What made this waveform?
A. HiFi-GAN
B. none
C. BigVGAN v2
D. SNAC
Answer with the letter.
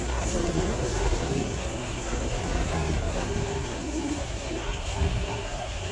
D